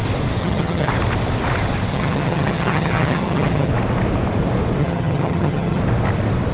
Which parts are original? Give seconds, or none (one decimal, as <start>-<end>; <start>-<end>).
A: 0.0-0.4; 0.9-1.9; 3.7-4.8; 5.8-6.5